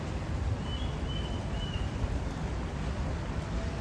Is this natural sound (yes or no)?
yes